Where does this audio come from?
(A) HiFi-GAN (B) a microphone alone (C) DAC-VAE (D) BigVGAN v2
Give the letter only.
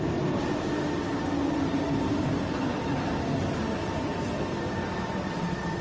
B